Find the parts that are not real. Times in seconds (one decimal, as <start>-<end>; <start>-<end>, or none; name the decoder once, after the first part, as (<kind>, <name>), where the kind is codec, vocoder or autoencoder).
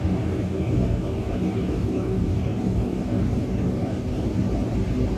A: 0.0-4.3 (codec, DAC)